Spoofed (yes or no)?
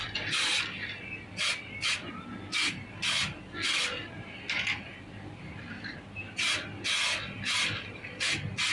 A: no